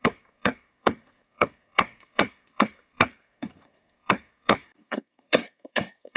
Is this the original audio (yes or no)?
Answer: no